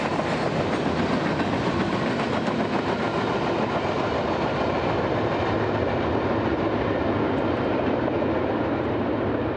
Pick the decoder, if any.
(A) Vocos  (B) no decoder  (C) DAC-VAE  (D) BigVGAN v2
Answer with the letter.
B